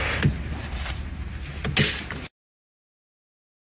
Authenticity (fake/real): real